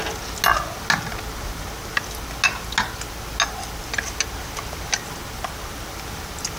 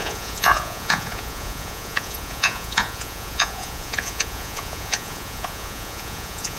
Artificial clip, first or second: second